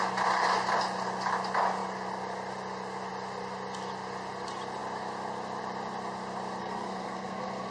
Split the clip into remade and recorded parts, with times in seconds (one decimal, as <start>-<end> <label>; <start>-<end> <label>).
0.0-6.6 recorded; 6.6-7.7 remade